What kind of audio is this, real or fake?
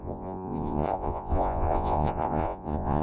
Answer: fake